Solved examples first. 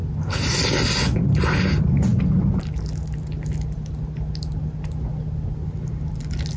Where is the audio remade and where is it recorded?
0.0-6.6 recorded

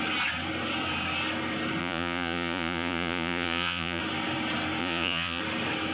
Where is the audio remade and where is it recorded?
0.0-1.8 recorded; 1.8-4.0 remade; 4.0-4.8 recorded; 4.8-5.4 remade; 5.4-5.9 recorded